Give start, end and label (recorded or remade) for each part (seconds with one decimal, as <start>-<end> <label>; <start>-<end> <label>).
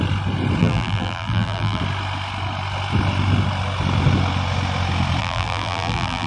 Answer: 0.0-0.6 recorded; 0.6-1.8 remade; 1.8-5.2 recorded; 5.2-6.3 remade